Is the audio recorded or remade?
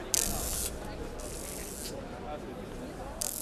recorded